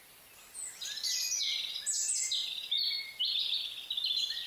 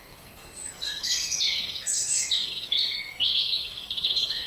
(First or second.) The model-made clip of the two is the second